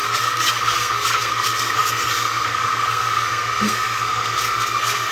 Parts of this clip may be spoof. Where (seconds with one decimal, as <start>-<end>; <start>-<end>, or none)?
0.0-5.1